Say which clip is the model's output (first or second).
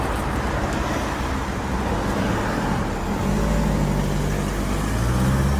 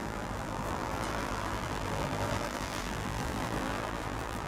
second